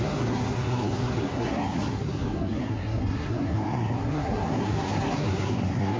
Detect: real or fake fake